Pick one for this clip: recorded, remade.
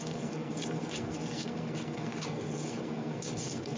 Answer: remade